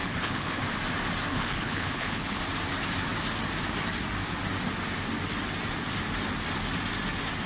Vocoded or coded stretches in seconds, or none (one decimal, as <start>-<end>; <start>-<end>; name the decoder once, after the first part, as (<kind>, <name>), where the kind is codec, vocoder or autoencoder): 0.0-0.6 (codec, HILCodec); 1.3-2.4